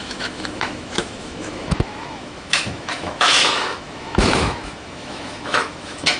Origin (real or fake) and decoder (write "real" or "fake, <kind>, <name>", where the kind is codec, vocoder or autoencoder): fake, autoencoder, DAC-VAE